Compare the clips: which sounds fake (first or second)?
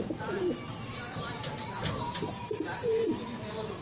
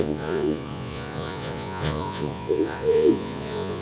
second